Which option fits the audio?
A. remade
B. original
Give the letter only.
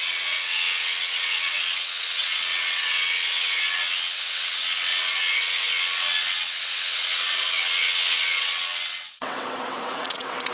A